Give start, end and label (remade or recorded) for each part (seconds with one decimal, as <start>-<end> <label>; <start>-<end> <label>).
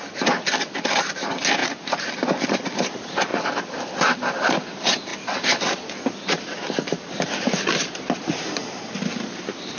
0.0-1.6 recorded; 1.6-2.9 remade; 2.9-9.8 recorded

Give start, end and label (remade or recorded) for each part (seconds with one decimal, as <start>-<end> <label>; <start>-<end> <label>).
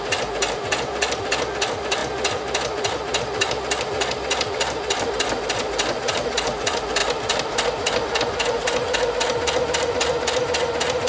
0.0-11.1 recorded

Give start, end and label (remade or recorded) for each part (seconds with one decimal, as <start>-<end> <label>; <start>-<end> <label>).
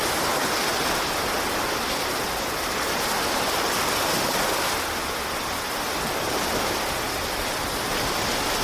0.0-8.6 recorded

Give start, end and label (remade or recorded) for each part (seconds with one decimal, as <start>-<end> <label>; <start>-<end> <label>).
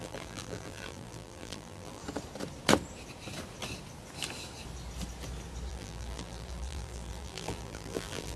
0.0-2.0 remade; 2.0-5.7 recorded; 5.7-8.4 remade